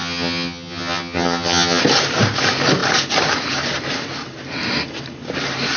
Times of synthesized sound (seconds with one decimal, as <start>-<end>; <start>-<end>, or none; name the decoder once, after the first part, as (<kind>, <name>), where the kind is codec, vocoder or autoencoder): 0.0-1.8 (vocoder, HiFi-GAN)